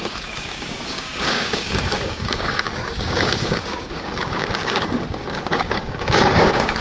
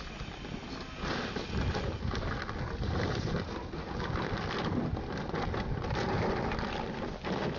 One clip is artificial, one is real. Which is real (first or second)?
second